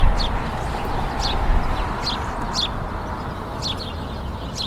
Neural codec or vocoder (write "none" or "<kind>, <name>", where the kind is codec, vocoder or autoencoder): none